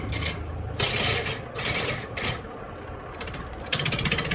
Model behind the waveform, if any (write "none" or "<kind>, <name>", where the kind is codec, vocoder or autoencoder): none